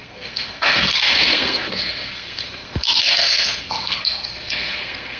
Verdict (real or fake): fake